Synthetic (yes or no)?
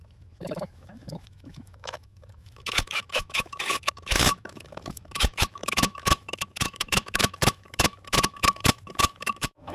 yes